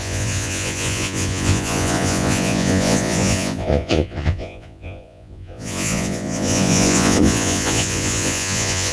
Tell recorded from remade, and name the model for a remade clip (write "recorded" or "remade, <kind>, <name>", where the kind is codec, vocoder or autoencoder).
remade, vocoder, Vocos